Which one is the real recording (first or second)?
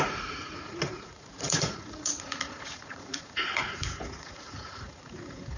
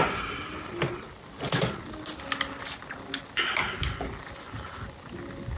second